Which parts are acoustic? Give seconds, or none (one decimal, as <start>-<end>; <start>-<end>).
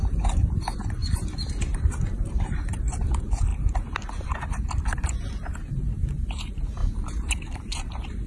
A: none